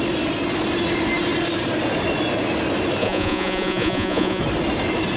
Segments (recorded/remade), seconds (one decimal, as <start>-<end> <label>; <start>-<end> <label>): 0.0-3.0 recorded; 3.0-4.4 remade; 4.4-5.2 recorded